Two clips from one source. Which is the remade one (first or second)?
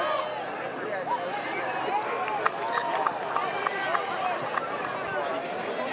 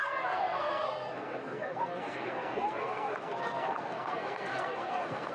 second